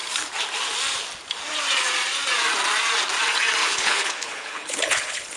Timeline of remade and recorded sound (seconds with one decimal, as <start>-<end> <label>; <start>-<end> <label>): 0.0-3.6 recorded; 3.6-5.4 remade